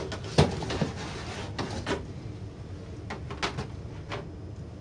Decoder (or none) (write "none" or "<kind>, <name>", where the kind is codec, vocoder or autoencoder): none